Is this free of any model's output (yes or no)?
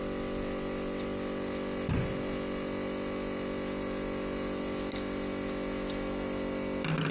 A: yes